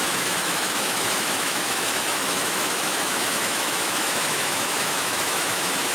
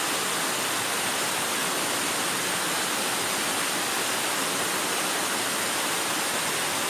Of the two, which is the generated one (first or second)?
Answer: first